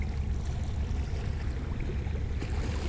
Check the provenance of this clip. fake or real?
real